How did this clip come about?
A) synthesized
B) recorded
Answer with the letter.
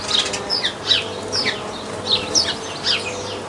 B